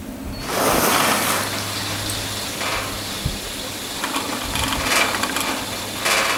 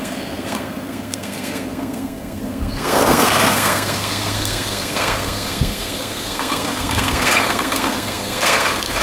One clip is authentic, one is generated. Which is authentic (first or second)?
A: first